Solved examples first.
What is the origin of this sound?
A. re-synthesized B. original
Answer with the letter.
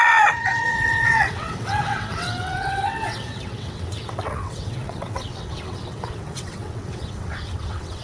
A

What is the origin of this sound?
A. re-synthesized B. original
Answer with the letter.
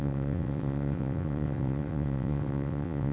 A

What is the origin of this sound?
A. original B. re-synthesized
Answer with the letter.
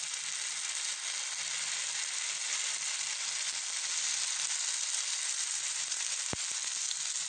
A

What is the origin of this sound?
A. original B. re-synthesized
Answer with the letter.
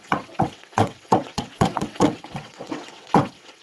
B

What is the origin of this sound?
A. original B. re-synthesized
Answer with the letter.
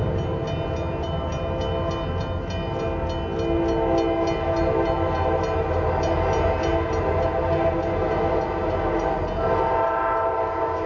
A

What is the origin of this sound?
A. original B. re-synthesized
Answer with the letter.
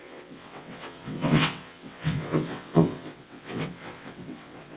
B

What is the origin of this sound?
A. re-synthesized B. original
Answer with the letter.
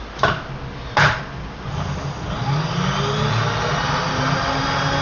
B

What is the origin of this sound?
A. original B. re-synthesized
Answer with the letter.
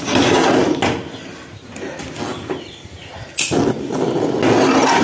A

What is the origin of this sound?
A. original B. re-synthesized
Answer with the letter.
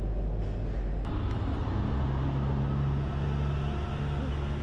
A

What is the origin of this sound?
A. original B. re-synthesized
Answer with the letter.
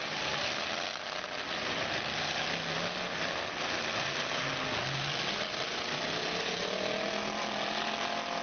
A